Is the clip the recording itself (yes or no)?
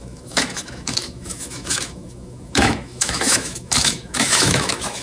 no